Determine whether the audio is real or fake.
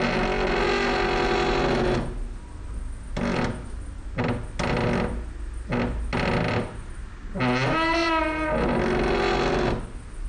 real